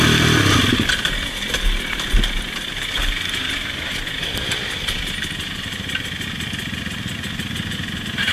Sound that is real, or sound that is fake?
real